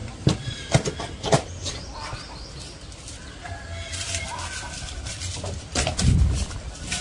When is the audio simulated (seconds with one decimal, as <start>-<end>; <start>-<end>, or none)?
0.0-7.0